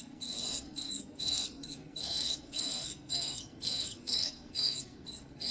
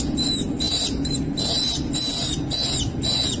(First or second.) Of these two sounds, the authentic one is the second